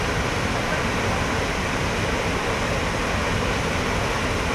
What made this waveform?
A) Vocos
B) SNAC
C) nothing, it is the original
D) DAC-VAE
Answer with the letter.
C